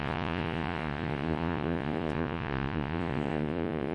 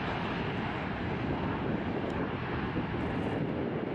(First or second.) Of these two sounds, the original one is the second